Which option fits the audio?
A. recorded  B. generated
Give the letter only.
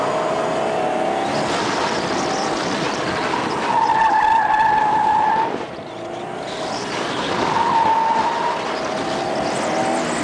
A